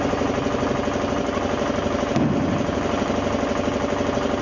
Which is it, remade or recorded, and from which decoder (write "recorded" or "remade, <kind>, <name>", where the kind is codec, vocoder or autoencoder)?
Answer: recorded